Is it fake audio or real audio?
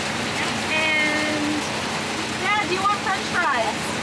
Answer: real